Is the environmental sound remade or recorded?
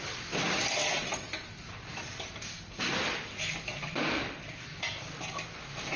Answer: recorded